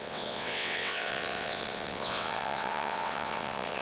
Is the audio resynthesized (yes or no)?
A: yes